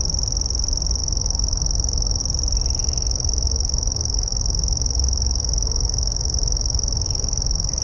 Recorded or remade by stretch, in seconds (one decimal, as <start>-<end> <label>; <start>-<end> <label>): 0.0-1.0 recorded; 1.0-2.2 remade; 2.2-2.8 recorded; 2.8-7.8 remade